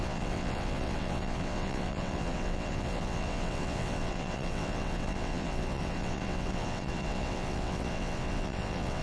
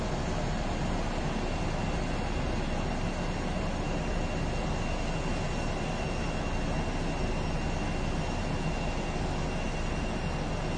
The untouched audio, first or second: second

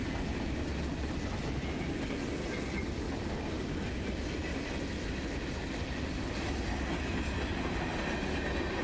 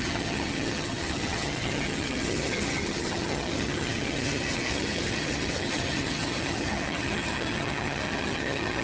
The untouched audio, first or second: first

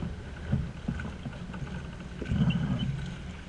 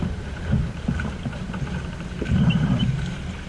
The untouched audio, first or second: first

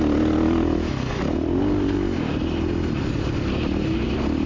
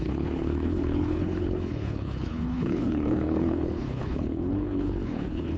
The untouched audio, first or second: first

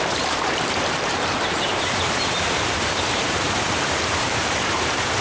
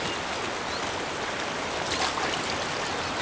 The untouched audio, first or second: second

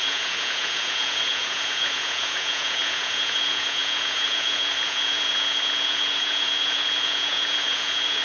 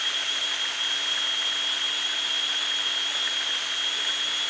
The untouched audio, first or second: second